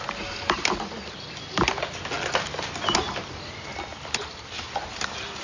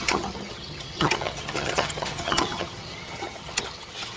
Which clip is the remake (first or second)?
second